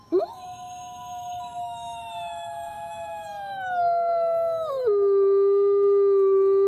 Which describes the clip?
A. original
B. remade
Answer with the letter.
B